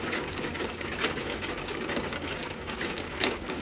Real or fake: fake